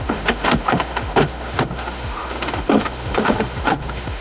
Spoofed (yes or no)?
yes